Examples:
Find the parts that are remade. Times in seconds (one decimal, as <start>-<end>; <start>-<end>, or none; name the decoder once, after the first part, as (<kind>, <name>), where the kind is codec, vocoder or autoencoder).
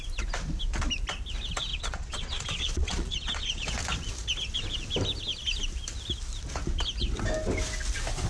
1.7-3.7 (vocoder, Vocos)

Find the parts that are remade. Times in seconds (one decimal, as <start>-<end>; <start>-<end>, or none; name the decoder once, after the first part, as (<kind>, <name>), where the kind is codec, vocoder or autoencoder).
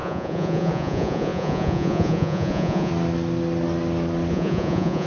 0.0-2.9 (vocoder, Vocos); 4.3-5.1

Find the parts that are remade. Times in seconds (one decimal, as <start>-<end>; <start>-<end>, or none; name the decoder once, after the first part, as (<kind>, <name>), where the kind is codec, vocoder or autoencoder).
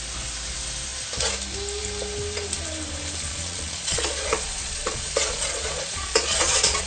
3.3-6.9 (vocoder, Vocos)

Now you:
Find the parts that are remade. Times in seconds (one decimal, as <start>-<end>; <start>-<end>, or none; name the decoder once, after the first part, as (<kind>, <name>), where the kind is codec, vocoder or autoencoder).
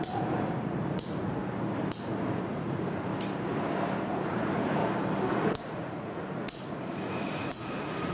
0.0-1.4 (vocoder, Vocos); 2.3-3.1; 4.1-4.8; 5.3-8.1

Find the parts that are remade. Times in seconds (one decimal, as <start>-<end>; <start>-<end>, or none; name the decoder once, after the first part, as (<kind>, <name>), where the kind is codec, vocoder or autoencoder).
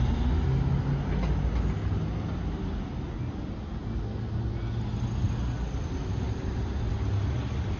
none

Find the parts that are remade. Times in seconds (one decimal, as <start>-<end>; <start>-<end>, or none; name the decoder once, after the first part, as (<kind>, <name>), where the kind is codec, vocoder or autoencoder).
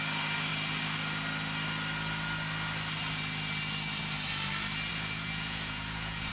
4.9-6.3 (vocoder, Vocos)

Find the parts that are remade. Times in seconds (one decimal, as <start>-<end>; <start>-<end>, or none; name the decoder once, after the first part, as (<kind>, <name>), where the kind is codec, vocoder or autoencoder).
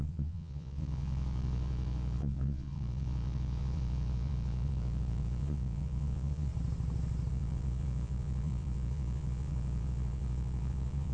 0.0-6.5 (vocoder, Vocos); 7.3-11.1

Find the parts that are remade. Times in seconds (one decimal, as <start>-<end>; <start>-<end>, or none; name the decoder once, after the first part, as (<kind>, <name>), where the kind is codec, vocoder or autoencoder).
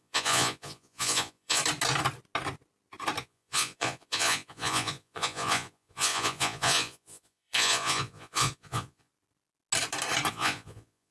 0.0-1.6 (vocoder, Vocos); 3.2-9.1; 10.3-11.1